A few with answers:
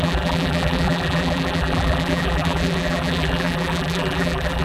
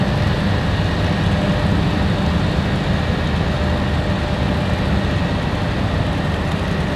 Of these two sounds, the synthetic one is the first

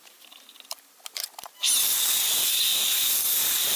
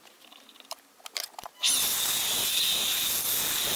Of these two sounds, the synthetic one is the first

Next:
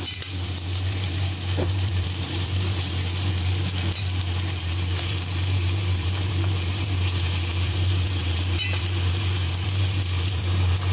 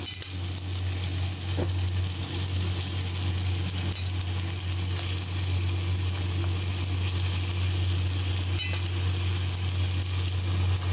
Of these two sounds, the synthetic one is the first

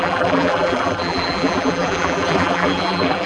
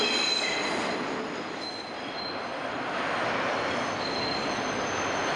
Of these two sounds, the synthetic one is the first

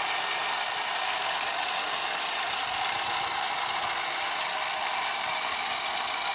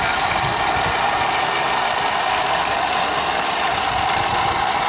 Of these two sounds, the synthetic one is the second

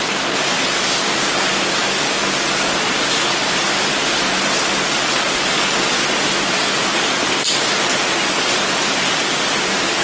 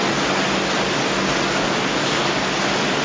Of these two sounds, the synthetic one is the first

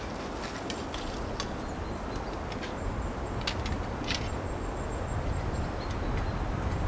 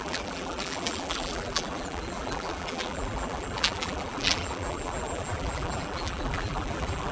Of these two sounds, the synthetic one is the second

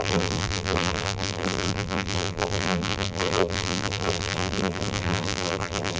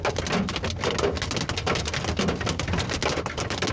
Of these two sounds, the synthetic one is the first